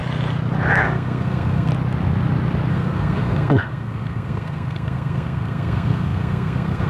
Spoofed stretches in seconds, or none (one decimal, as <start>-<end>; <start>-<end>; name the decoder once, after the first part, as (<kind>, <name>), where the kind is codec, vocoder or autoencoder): 0.7-1.7 (codec, SNAC); 2.7-6.9